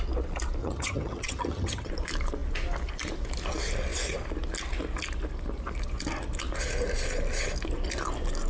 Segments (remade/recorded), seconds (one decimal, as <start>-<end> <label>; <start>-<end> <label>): 0.0-0.6 recorded; 0.6-1.9 remade; 1.9-8.5 recorded